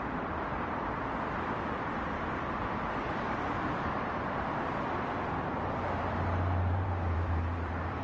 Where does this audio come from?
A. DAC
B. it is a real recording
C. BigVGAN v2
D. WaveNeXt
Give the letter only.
C